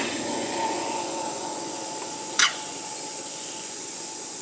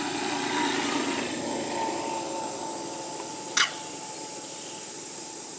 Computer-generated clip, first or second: first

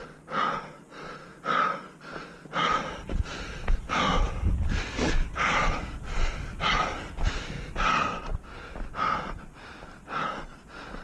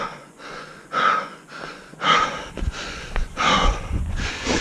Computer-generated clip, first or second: second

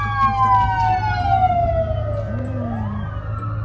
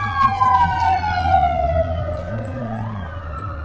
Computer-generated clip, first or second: second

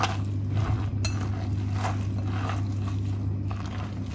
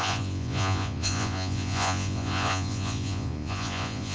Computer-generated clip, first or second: second